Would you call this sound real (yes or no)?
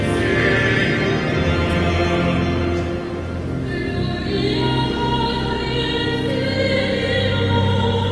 yes